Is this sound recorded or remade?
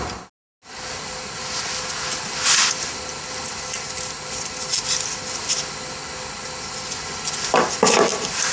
recorded